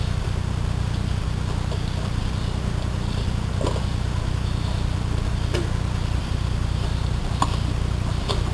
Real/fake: real